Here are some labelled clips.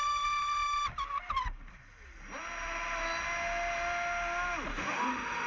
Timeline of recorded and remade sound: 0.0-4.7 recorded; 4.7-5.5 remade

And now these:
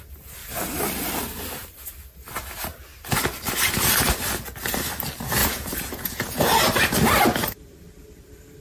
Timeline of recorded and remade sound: 0.0-5.4 recorded; 5.4-6.4 remade; 6.4-8.6 recorded

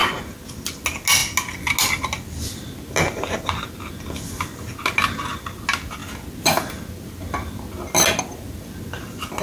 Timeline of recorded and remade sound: 0.0-9.4 recorded